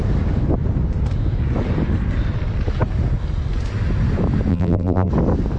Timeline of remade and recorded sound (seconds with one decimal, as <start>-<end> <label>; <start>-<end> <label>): 0.0-4.5 recorded; 4.5-5.1 remade; 5.1-5.6 recorded